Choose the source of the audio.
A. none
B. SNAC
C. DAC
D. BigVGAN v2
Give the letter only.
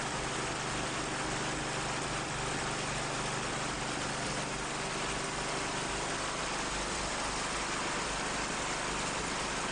A